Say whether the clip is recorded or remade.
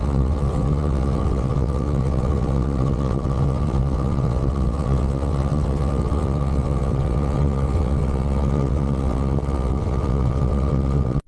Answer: remade